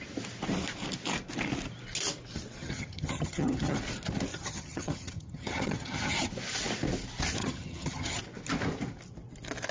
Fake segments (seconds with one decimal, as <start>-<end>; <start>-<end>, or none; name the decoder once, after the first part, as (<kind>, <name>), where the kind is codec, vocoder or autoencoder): 2.6-3.8 (vocoder, HiFi-GAN); 4.3-6.3; 7.4-8.2